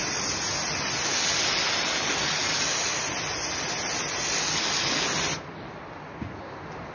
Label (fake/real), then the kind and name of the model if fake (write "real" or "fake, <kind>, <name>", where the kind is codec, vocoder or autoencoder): real